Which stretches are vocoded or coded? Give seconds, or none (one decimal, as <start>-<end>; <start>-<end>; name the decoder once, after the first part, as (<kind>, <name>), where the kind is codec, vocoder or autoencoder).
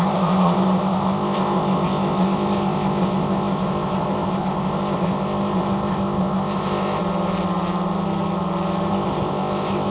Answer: 0.0-7.0 (codec, ZipCodec); 8.9-9.9